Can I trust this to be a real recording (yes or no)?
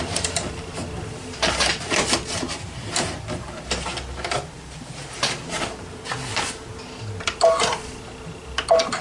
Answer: yes